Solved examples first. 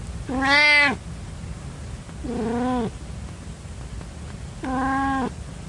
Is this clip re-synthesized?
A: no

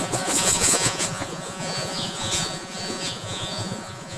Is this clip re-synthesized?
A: yes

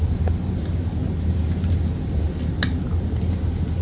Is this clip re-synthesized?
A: no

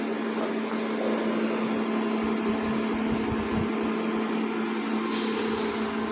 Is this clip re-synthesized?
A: no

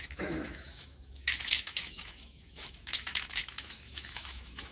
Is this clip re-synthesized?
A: yes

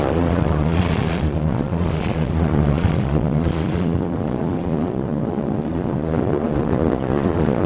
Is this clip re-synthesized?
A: yes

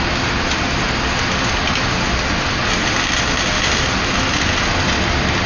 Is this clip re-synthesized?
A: no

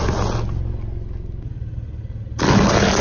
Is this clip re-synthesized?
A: no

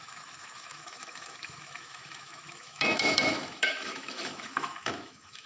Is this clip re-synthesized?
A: yes